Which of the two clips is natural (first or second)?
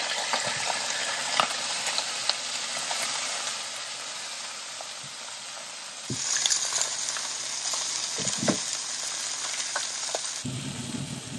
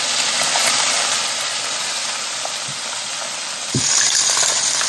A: first